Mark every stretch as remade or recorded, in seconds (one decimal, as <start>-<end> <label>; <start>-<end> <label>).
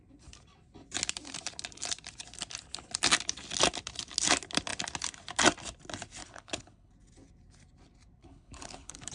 0.0-6.2 recorded; 6.2-6.9 remade; 6.9-8.2 recorded; 8.2-9.1 remade